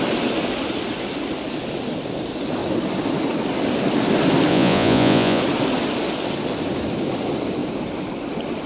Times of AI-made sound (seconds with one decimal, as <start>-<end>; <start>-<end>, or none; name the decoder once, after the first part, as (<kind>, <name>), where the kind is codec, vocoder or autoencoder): 4.5-5.4 (vocoder, Vocos)